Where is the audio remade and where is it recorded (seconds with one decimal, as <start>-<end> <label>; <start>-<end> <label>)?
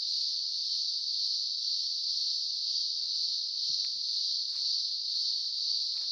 0.0-0.6 recorded; 0.6-1.5 remade; 1.5-2.1 recorded; 2.1-6.1 remade